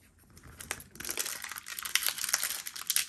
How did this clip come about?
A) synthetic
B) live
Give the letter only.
B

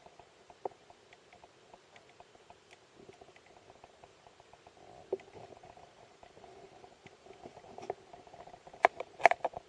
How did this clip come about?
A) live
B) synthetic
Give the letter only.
A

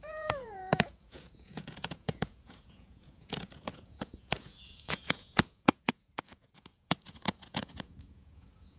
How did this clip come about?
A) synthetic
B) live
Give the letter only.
A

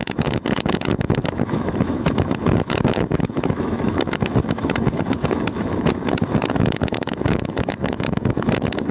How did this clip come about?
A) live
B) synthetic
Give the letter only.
B